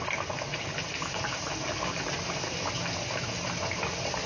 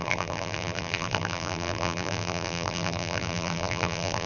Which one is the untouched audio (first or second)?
first